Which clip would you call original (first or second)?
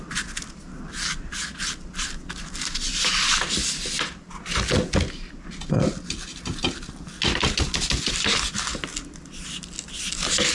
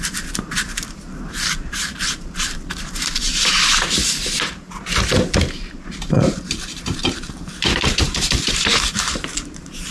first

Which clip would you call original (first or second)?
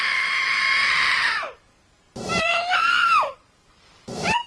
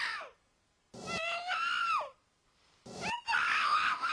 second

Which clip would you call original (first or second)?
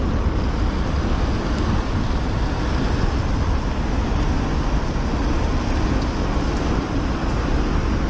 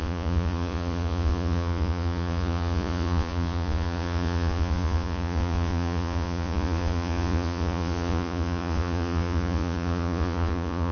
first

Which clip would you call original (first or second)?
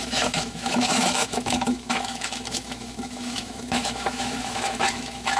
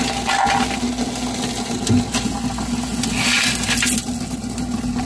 second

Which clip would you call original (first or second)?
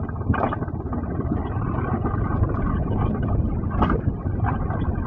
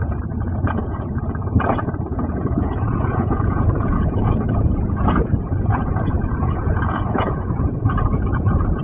first